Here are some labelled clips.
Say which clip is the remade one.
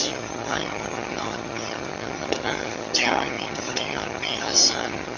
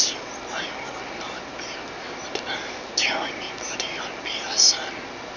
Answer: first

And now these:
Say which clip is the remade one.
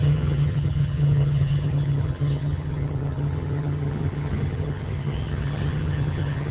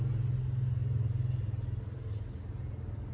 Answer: first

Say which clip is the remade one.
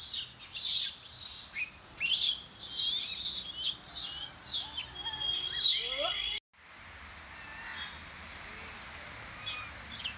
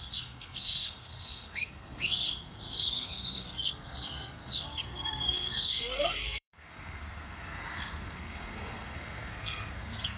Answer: second